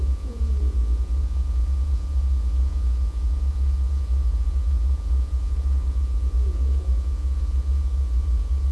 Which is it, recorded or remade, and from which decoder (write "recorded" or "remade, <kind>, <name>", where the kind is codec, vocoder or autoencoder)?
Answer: remade, vocoder, Vocos